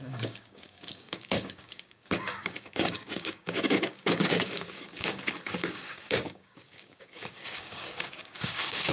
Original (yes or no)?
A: no